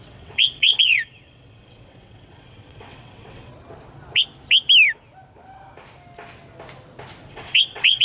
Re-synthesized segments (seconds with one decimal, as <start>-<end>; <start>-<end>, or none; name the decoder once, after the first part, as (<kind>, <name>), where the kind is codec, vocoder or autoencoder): 0.0-3.5 (vocoder, WaveNeXt); 7.3-8.0